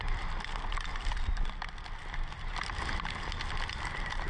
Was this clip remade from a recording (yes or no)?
no